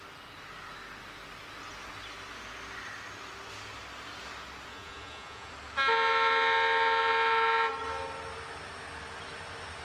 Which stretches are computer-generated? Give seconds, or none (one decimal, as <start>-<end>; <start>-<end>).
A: 4.7-5.5